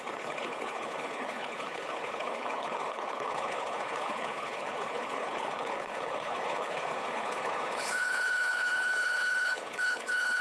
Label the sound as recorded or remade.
remade